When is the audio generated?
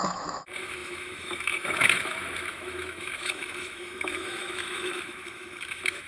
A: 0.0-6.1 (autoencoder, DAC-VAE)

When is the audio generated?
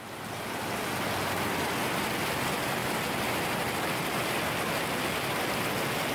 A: none